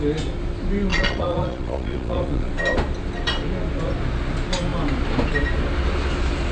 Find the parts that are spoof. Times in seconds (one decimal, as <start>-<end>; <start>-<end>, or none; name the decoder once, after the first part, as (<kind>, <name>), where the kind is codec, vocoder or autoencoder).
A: 0.9-2.5 (vocoder, Vocos)